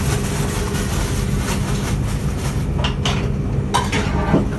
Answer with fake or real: real